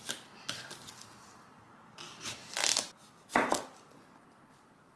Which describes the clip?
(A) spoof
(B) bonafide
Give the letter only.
B